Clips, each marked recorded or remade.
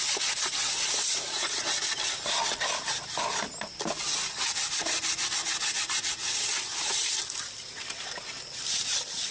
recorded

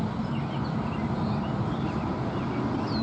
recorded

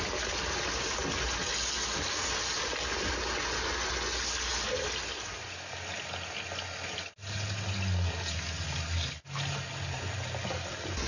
recorded